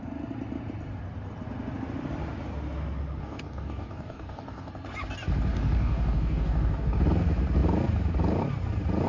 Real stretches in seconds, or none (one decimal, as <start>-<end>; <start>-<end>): 0.0-3.2; 4.7-5.5; 7.0-9.1